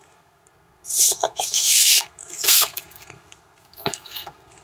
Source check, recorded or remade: remade